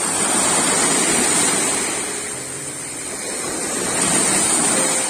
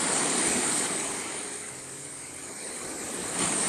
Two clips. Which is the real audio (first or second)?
first